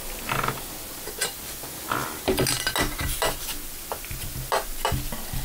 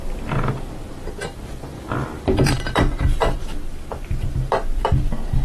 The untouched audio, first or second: first